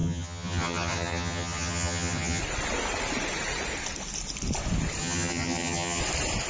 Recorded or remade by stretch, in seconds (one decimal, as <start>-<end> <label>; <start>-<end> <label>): 0.0-2.4 remade; 2.4-5.0 recorded; 5.0-6.0 remade; 6.0-6.5 recorded